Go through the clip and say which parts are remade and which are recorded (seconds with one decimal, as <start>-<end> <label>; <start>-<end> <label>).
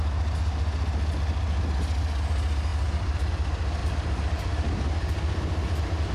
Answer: 0.0-2.7 recorded; 2.7-3.3 remade; 3.3-3.8 recorded; 3.8-4.9 remade; 4.9-6.1 recorded